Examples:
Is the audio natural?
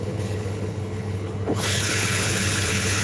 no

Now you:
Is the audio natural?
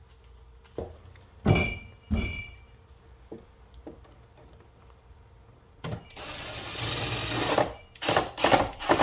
yes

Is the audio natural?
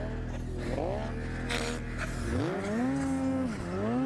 yes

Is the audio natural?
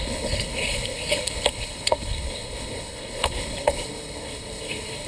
no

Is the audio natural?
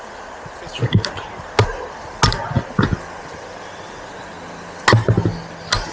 yes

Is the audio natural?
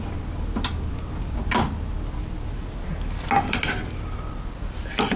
yes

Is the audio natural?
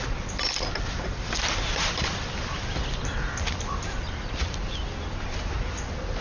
yes